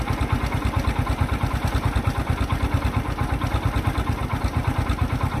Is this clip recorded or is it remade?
recorded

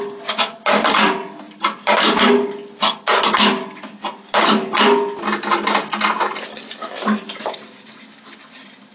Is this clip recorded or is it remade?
recorded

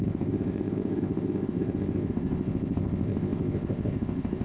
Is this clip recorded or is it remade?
remade